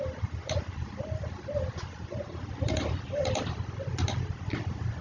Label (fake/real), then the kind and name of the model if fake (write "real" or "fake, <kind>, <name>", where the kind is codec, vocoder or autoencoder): real